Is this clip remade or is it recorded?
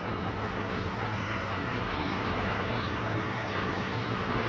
remade